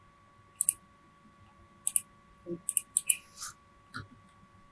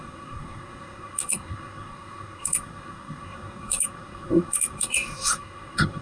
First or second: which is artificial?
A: second